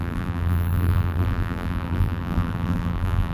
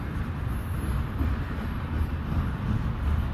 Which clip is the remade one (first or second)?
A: first